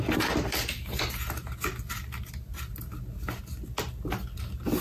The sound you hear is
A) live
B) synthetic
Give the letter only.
A